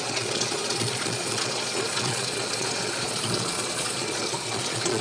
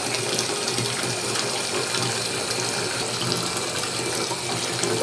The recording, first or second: second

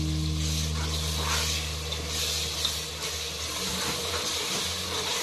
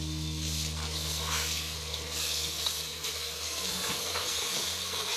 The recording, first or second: first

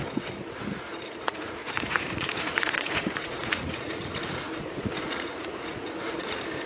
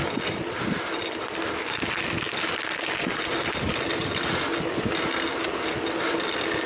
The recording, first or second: second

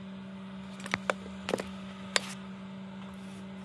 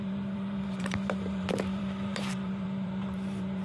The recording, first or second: first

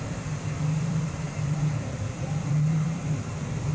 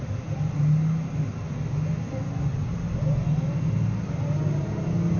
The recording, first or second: second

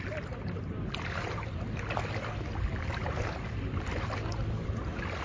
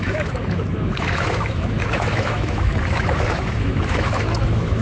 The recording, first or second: first